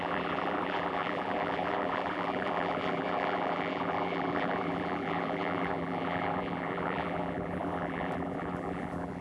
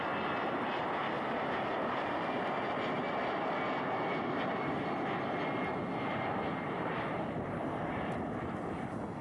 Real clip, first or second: second